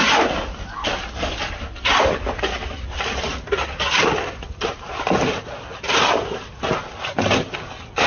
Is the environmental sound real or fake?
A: real